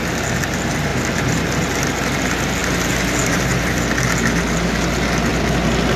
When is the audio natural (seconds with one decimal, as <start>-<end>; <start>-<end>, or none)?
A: 0.0-6.0